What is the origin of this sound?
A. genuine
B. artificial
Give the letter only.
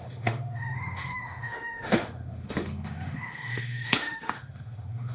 B